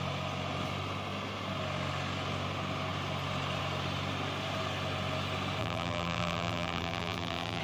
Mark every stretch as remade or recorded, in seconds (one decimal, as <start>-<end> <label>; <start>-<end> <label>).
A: 0.0-5.6 recorded; 5.6-7.6 remade